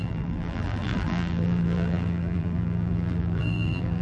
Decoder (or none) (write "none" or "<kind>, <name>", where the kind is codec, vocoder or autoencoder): vocoder, BigVGAN v2